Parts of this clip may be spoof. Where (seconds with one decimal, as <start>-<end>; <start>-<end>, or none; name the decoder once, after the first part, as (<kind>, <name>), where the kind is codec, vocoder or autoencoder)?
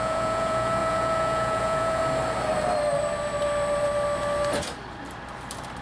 0.0-2.0 (vocoder, Vocos)